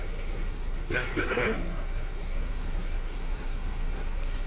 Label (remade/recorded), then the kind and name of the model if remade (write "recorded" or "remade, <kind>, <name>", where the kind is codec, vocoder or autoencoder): remade, codec, SNAC